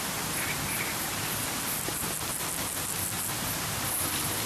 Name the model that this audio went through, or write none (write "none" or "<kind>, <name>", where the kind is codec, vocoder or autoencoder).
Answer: none